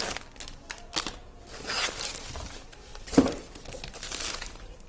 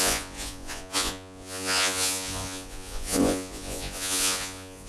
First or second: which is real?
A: first